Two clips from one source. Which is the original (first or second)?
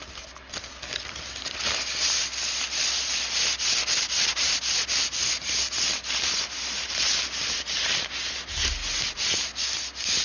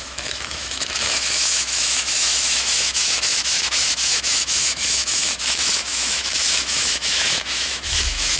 first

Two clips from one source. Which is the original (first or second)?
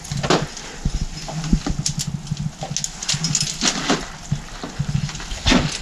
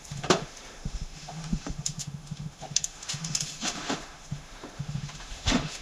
first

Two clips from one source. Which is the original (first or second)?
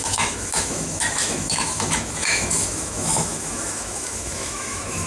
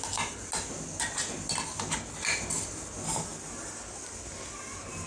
second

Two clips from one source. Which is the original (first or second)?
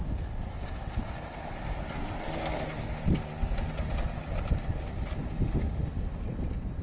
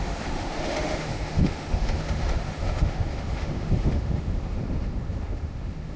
first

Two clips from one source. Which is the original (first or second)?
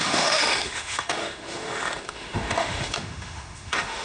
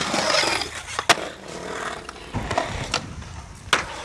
second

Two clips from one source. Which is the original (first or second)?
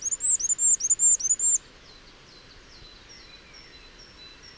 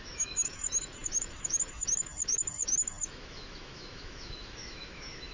first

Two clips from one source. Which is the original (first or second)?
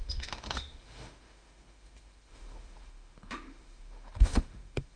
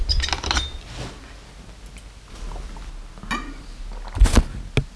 second